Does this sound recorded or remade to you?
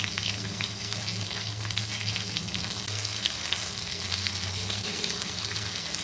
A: remade